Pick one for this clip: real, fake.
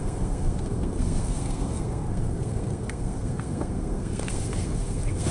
fake